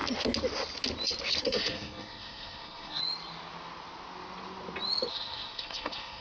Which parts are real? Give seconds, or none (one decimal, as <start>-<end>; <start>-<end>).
0.0-1.4; 3.0-5.1